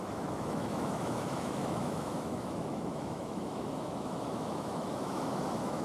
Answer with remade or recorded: remade